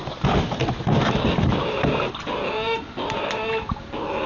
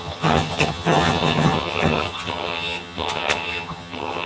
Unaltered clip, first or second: first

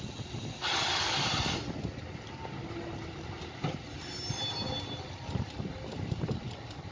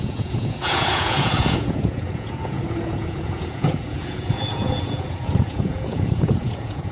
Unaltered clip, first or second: first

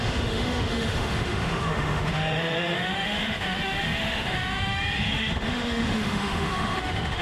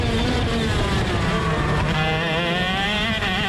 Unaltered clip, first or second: second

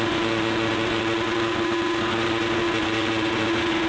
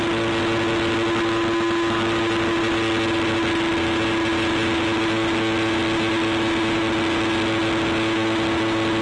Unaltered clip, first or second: second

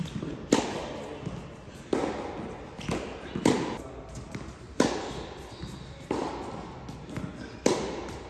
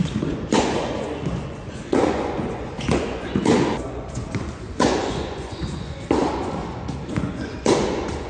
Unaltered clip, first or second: first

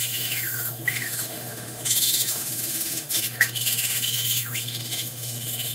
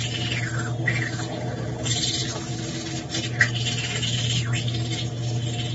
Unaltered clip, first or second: second